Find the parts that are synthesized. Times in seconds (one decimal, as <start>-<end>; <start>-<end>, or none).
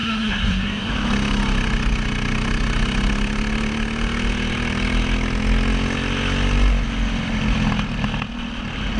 0.0-0.9